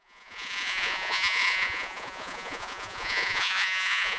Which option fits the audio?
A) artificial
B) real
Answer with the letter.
A